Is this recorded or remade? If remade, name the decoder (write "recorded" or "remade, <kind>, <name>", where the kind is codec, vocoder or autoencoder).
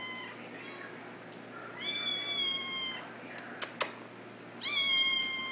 recorded